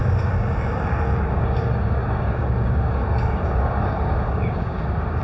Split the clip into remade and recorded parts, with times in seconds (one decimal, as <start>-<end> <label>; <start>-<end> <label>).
0.0-5.2 remade